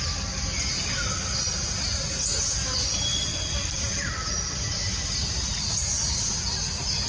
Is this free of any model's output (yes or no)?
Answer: yes